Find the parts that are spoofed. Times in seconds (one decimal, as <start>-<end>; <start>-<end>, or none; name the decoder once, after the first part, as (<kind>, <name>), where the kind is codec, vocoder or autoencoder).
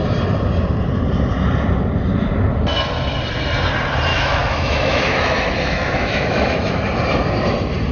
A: 4.1-6.8 (autoencoder, DAC-VAE)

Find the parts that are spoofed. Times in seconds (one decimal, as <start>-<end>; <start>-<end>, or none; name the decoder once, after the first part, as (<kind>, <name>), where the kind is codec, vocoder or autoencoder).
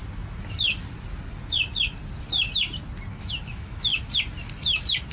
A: 3.1-3.9 (autoencoder, DAC-VAE)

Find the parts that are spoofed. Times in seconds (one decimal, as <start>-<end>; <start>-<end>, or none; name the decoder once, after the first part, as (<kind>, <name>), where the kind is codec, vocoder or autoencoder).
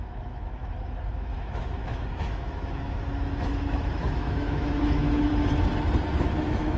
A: 0.0-5.3 (autoencoder, DAC-VAE); 6.2-6.8